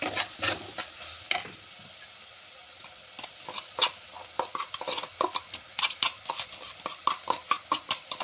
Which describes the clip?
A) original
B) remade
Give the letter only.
A